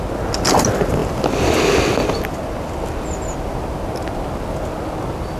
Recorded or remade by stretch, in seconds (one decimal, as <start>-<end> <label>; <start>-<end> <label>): 0.0-5.4 recorded